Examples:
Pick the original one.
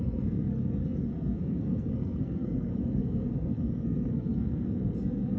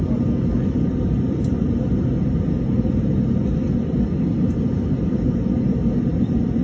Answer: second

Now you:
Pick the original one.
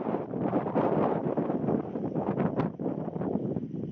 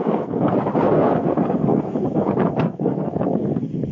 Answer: first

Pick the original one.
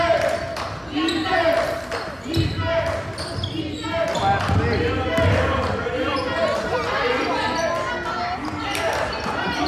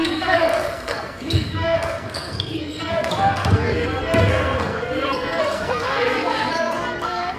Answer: first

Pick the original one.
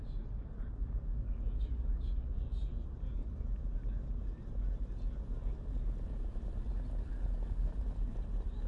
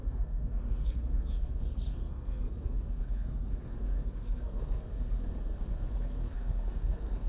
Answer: first